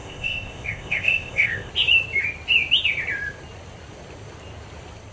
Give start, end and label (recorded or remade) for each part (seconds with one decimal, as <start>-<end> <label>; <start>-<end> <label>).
0.0-1.7 remade; 1.7-5.1 recorded